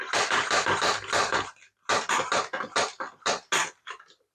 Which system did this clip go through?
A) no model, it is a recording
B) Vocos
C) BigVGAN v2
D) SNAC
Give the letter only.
A